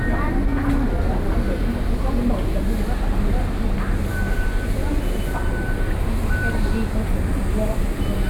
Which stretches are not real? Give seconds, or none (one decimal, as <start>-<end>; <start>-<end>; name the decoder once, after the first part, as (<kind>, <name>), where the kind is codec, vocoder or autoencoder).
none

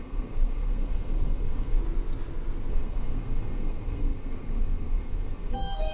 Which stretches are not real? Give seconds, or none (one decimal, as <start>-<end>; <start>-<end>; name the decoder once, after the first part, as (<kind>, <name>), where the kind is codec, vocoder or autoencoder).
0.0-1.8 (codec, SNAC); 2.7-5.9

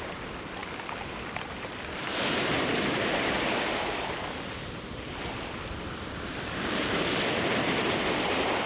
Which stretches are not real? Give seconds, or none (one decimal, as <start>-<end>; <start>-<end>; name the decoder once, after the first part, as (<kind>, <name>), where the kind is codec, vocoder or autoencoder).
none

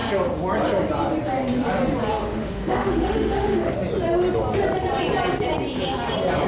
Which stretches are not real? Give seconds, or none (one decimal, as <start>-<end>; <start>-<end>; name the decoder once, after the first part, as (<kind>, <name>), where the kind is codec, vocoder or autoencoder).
2.1-3.7 (autoencoder, DAC-VAE)

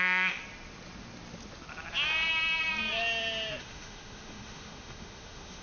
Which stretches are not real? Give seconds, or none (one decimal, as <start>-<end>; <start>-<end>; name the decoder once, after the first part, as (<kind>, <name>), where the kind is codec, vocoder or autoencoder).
0.0-0.4 (autoencoder, DAC-VAE); 3.6-5.6

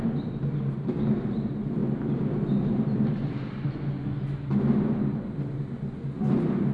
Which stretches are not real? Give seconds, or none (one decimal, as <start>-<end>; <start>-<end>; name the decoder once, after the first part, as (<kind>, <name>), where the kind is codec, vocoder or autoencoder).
none

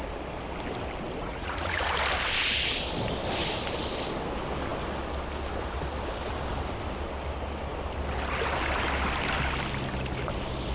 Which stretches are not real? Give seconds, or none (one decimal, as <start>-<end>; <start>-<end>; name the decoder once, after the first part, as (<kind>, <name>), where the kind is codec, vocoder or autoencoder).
1.2-1.9 (vocoder, Vocos)

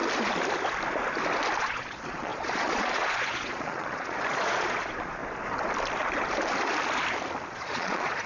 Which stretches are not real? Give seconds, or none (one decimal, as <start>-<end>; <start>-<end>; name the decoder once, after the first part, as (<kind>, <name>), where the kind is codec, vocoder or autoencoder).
1.6-5.2 (vocoder, Vocos); 7.5-8.3